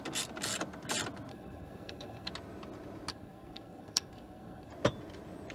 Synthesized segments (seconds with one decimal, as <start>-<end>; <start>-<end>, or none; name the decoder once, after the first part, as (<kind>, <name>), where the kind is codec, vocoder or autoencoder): 1.3-2.3 (codec, SNAC); 3.1-4.7

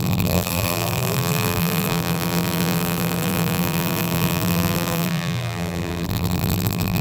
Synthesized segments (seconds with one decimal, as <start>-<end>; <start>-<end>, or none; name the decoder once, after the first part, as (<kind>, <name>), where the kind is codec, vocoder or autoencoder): 0.0-7.0 (vocoder, BigVGAN v2)

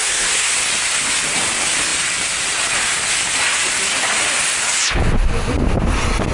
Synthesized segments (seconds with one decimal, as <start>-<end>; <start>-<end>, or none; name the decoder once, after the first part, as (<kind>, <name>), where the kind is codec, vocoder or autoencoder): 0.0-0.5 (codec, SNAC)

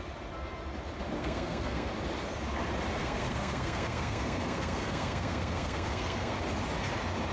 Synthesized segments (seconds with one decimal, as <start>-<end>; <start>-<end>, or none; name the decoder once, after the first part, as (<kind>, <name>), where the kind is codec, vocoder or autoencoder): 1.2-1.9 (codec, SNAC); 3.0-6.4

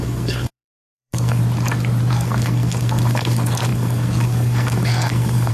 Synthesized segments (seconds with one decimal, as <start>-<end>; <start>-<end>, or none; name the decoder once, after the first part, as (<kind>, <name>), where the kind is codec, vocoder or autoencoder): 0.0-1.4 (codec, SNAC); 2.1-5.5

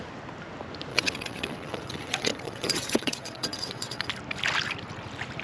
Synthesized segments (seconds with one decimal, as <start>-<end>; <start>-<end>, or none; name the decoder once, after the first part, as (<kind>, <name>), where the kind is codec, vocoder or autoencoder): 0.9-4.1 (vocoder, WaveNeXt)

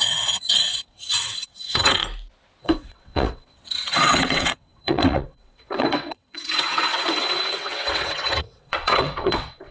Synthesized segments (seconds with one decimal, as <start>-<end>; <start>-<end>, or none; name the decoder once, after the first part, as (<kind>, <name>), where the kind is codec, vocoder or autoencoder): 0.0-2.0 (vocoder, WaveNeXt); 2.6-9.7